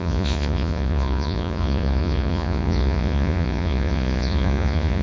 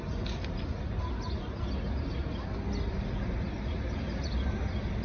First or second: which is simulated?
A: first